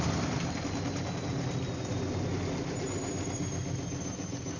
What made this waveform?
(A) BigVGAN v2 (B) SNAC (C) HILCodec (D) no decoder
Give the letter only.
D